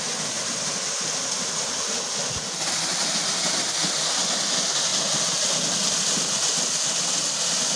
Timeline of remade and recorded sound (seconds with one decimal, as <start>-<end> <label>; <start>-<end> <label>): 0.0-7.8 recorded